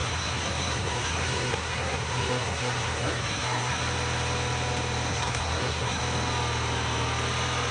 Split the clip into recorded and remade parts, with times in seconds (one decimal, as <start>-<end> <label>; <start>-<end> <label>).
0.0-3.8 remade; 3.8-5.1 recorded; 5.1-6.0 remade; 6.0-7.7 recorded